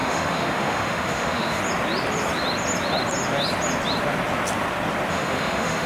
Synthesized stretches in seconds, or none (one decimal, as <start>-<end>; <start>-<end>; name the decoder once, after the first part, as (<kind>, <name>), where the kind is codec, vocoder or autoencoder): 0.0-1.6 (autoencoder, DAC-VAE); 5.1-5.9